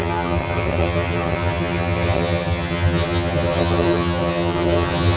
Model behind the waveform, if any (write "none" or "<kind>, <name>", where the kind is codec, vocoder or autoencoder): vocoder, HiFi-GAN